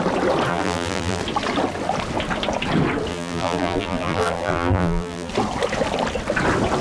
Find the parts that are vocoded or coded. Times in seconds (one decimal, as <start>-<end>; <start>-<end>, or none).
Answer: 0.5-1.2; 3.1-5.3